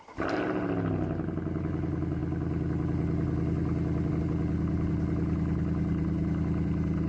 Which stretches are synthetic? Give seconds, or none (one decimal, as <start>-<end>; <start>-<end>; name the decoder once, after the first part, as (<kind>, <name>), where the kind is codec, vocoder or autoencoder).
none